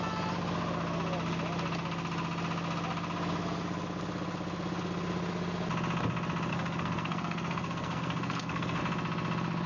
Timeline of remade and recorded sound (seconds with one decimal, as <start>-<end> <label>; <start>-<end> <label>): 0.0-6.5 recorded; 6.5-8.8 remade; 8.8-9.7 recorded

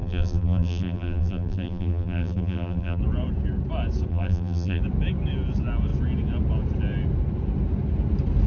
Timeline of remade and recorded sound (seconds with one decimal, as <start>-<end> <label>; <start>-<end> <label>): 0.0-3.0 remade; 3.0-4.1 recorded; 4.1-4.8 remade; 4.8-8.5 recorded

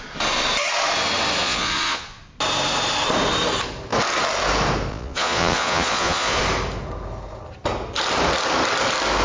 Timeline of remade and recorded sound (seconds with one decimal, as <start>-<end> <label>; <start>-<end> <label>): 0.0-1.4 recorded; 1.4-2.2 remade; 2.2-4.9 recorded; 4.9-6.4 remade; 6.4-9.2 recorded

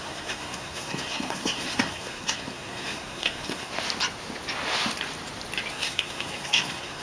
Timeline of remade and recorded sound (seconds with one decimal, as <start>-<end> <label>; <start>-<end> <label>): 0.0-3.7 remade; 3.7-5.7 recorded; 5.7-7.0 remade